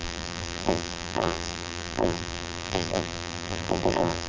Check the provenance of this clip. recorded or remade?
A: remade